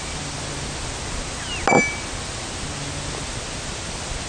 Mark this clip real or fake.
real